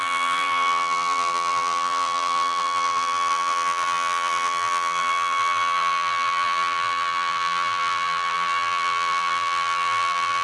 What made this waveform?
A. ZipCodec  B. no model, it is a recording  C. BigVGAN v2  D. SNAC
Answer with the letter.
C